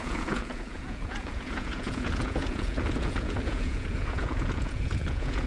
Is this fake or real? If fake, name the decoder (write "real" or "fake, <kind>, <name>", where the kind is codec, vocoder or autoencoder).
fake, vocoder, Vocos